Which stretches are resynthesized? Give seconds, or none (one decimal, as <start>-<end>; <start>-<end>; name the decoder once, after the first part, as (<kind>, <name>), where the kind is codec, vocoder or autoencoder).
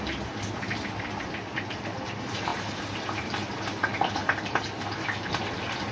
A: none